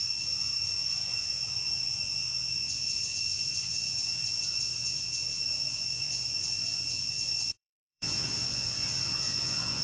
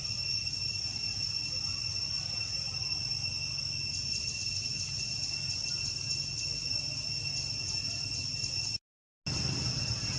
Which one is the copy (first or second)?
first